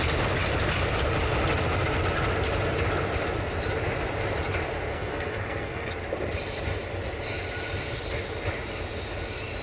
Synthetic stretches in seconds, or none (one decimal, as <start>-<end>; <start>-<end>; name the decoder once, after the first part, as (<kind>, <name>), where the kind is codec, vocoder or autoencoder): 4.9-5.9 (codec, SNAC)